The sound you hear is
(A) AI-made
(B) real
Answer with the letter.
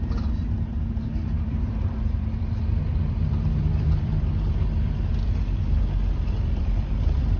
A